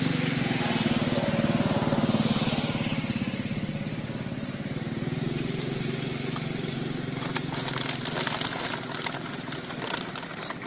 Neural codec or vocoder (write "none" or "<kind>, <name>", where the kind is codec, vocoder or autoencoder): none